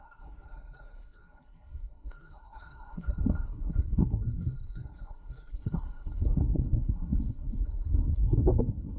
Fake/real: fake